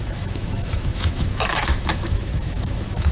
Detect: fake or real fake